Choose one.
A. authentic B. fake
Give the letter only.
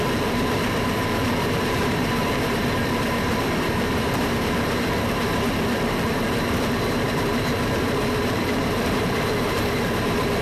B